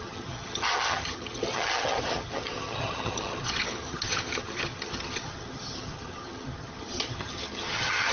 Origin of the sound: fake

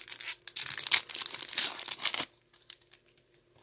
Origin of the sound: real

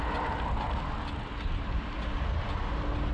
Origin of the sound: real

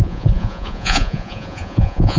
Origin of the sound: fake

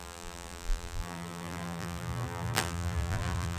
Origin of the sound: fake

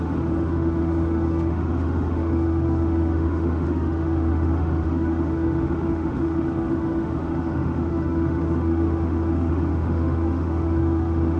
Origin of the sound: fake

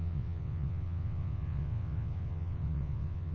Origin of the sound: fake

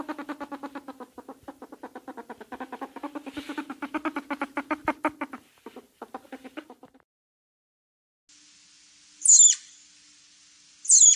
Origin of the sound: real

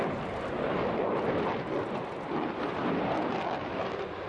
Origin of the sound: real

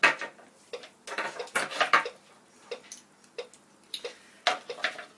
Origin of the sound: real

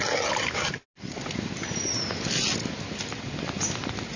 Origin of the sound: real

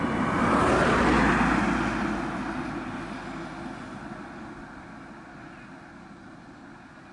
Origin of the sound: real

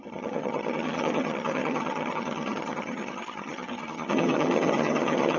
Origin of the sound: fake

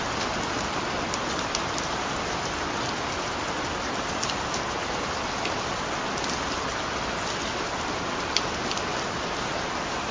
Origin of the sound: real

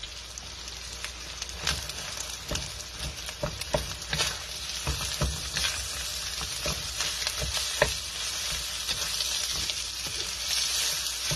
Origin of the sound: real